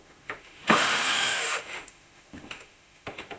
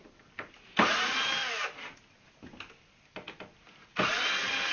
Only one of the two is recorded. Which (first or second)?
second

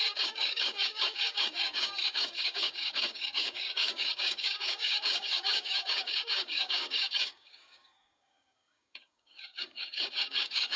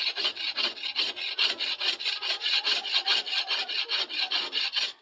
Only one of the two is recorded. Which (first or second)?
second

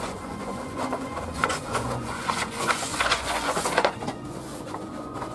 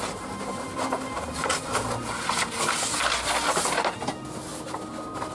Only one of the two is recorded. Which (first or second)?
second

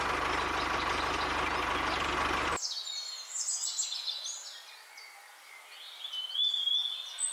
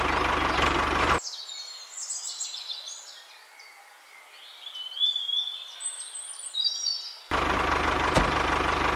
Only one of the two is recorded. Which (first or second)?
first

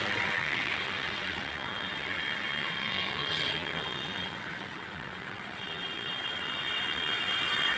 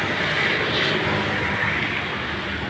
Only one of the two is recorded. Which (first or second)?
second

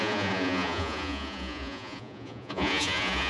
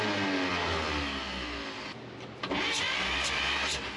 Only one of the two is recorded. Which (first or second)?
second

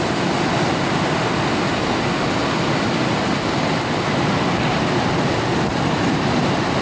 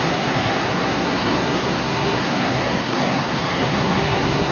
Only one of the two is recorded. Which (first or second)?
first